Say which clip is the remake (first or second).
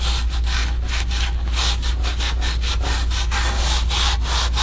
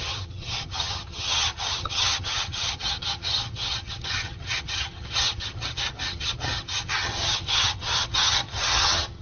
second